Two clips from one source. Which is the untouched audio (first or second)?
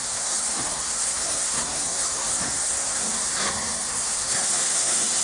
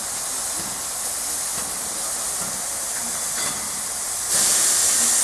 second